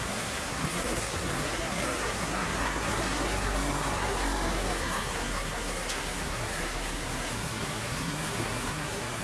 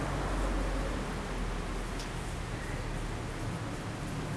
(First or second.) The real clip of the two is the second